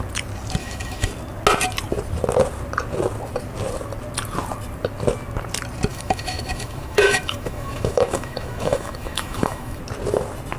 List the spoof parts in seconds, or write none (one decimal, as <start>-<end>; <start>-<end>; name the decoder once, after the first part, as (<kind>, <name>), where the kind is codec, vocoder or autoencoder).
0.6-1.1 (autoencoder, DAC-VAE); 5.9-9.8